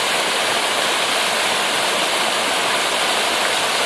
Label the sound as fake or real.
real